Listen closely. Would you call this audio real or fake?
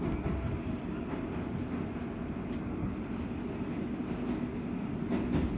real